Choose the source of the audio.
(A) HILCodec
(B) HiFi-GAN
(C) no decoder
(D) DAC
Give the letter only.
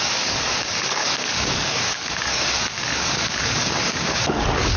D